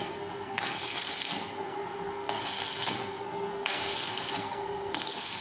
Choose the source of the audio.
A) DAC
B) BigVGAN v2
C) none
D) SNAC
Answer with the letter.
D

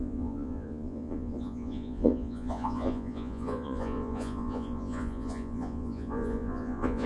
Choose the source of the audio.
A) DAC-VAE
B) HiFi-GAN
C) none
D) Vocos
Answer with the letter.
D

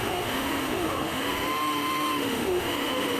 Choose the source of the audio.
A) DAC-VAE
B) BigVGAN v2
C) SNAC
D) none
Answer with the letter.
A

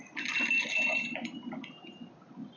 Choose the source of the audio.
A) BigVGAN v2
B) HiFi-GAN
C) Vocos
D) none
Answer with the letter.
A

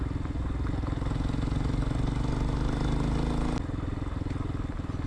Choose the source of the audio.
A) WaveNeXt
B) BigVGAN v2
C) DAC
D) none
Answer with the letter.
D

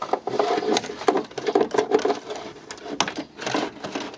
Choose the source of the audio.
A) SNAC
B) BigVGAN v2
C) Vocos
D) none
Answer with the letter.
D